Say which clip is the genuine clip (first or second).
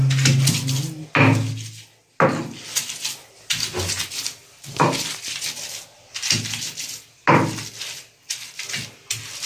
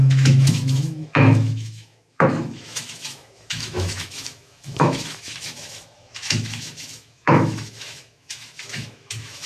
first